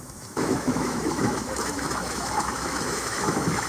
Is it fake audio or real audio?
fake